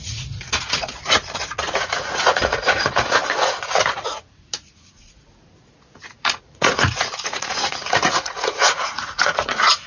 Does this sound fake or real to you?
fake